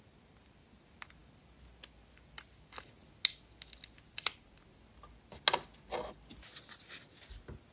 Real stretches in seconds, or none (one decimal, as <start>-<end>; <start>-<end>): 0.0-7.7